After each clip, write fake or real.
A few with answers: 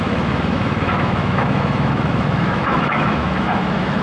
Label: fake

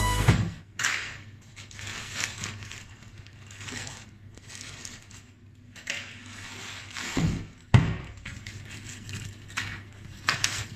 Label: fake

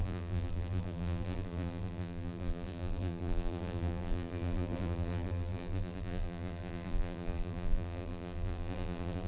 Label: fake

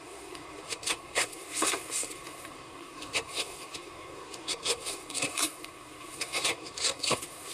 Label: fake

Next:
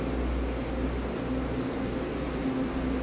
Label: real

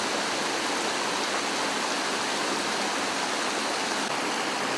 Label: real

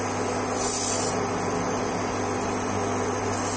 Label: real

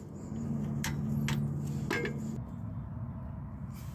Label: real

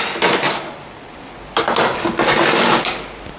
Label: real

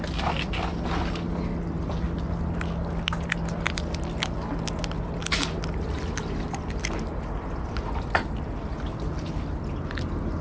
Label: real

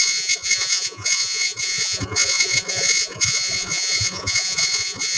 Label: fake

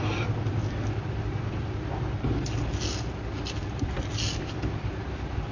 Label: real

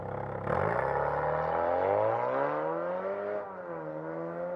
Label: real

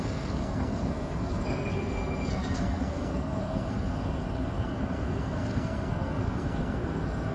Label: fake